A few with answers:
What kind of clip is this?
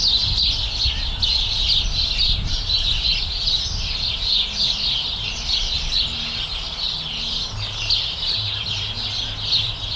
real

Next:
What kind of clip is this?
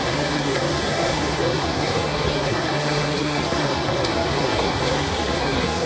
fake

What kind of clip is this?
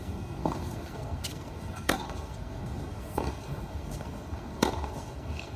fake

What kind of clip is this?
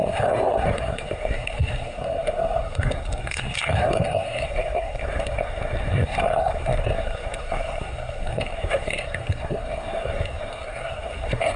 fake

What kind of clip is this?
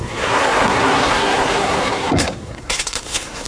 fake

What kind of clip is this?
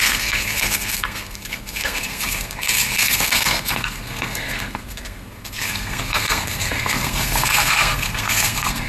fake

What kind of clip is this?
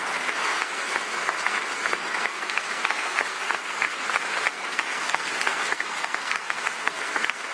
fake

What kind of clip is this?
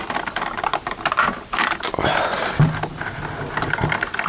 real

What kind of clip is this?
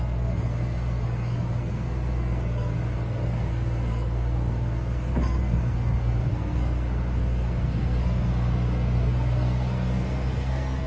fake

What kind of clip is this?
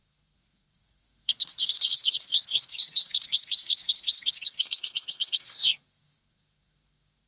fake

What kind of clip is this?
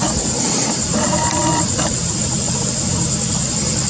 real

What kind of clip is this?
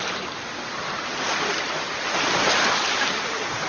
real